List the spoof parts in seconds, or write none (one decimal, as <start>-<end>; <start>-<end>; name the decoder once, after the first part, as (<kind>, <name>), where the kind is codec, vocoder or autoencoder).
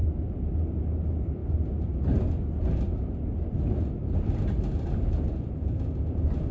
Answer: none